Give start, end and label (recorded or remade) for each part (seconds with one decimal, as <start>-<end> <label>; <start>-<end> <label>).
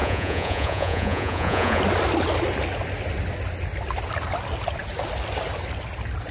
0.0-1.8 remade; 1.8-6.3 recorded